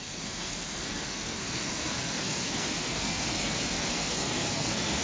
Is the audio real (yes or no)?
no